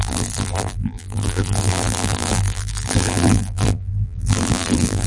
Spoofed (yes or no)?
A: yes